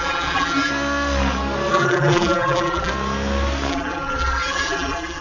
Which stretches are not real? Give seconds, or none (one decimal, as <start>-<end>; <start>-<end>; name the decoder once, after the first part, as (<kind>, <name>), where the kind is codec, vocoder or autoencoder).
0.0-0.7 (vocoder, BigVGAN v2); 1.7-2.9; 3.7-5.2